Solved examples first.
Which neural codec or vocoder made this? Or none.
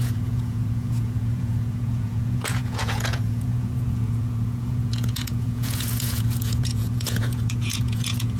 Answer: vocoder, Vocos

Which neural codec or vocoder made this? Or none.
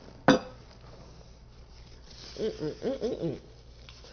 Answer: none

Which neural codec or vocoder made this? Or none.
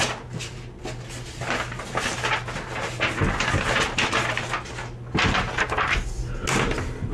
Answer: none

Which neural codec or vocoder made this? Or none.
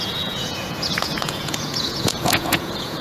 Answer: vocoder, Vocos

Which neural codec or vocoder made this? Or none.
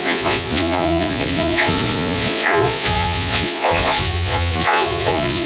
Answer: vocoder, Vocos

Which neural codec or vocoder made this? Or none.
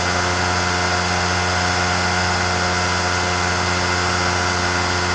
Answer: none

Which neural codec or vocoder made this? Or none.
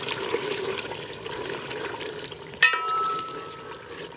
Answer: vocoder, BigVGAN v2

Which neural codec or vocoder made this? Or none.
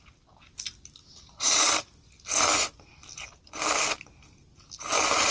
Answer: none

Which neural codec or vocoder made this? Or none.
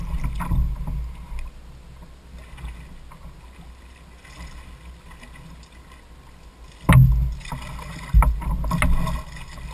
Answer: none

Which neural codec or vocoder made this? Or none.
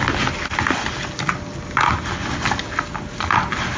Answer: none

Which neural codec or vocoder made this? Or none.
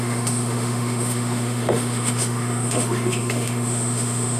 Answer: autoencoder, DAC-VAE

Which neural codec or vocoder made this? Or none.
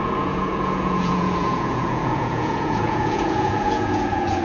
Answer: vocoder, Vocos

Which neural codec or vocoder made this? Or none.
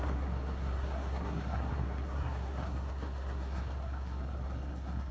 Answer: codec, SNAC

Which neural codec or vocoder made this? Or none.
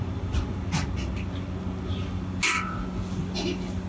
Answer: none